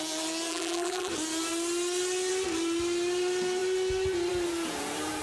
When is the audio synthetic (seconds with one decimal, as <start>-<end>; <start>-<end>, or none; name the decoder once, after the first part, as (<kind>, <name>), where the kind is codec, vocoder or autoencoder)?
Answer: 0.5-1.1 (vocoder, BigVGAN v2)